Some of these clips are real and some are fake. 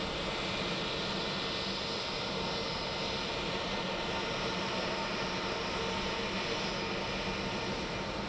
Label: real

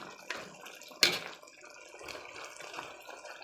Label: real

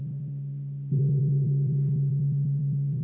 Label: fake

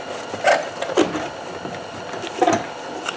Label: real